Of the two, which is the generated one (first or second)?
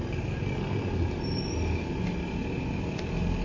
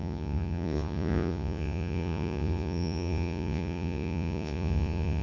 second